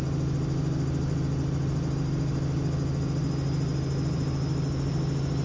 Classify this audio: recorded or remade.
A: recorded